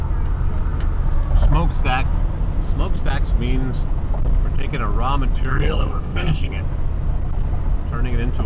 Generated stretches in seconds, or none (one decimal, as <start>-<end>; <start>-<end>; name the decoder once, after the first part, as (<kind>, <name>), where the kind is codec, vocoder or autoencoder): 5.5-6.5 (codec, SNAC)